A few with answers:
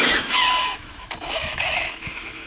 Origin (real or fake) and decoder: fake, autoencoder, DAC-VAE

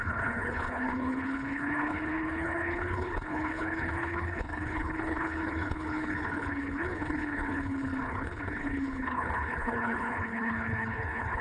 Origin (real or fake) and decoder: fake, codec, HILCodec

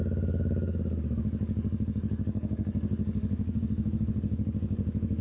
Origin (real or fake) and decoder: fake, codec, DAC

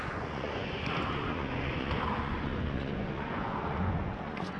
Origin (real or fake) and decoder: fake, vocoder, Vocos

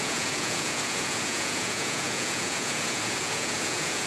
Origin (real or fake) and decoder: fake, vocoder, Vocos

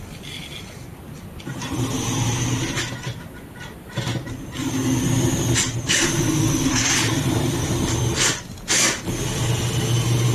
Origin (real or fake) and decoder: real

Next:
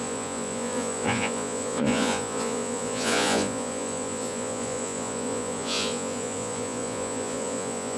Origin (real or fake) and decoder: fake, vocoder, Vocos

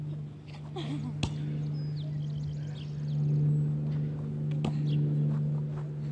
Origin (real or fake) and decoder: real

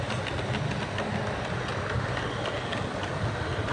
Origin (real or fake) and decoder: real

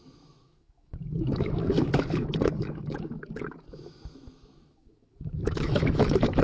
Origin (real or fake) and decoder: fake, autoencoder, DAC-VAE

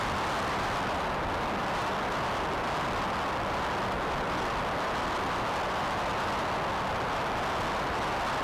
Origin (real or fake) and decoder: real